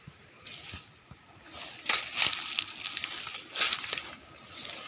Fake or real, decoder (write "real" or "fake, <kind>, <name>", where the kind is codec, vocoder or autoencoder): real